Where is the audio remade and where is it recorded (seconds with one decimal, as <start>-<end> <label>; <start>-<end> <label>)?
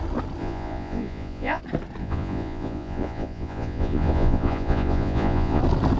0.0-0.4 recorded; 0.4-1.6 remade; 1.6-2.0 recorded; 2.0-5.6 remade; 5.6-6.0 recorded